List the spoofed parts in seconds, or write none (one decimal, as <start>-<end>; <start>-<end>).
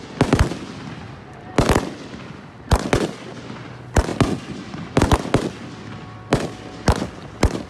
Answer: none